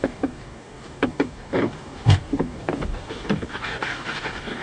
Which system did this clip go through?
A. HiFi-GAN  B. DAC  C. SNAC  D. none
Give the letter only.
B